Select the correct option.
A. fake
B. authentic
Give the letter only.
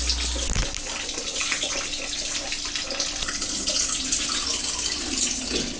B